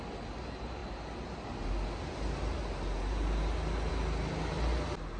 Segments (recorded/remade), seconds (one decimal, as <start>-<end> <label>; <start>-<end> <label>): 0.0-5.2 recorded